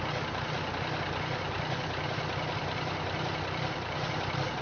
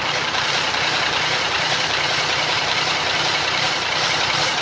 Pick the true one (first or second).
first